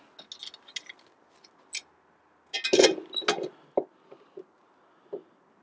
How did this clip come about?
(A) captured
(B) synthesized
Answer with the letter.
A